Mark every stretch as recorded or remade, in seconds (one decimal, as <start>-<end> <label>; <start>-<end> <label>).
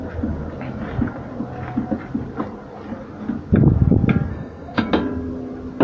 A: 0.0-4.3 recorded; 4.3-4.9 remade; 4.9-5.8 recorded